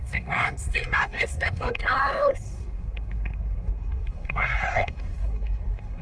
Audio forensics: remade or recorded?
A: remade